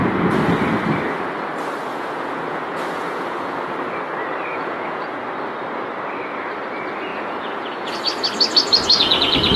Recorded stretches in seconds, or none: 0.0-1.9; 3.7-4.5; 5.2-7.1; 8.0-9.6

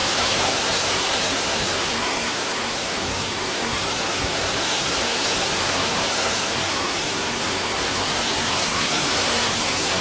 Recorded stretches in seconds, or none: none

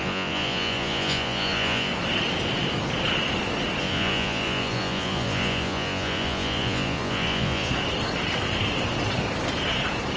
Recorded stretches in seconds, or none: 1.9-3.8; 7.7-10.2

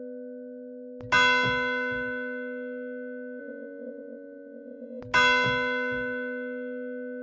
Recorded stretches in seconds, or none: 0.0-3.4; 5.0-7.2

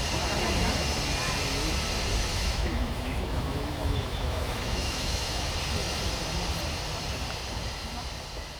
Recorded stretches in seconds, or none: 0.0-2.3; 5.5-8.6

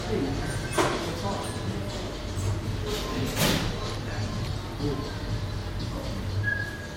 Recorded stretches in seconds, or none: 0.0-7.0